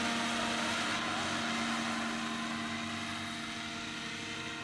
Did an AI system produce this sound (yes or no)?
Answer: no